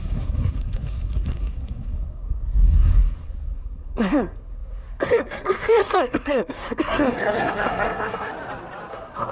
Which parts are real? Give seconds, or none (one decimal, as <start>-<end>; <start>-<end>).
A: 8.3-8.9